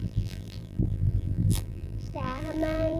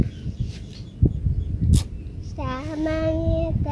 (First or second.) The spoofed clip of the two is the first